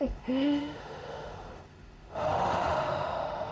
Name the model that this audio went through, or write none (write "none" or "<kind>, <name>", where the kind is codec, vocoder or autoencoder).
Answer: autoencoder, DAC-VAE